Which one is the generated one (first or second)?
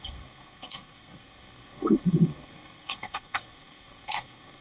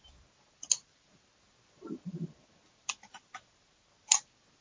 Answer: first